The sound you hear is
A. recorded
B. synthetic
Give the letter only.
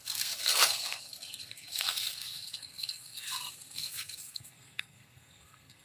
B